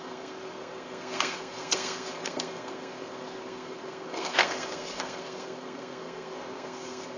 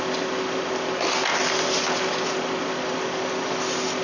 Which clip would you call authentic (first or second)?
second